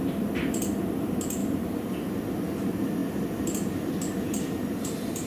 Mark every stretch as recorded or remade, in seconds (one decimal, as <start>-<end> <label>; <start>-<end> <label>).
0.0-1.4 recorded; 1.4-2.1 remade; 2.1-5.3 recorded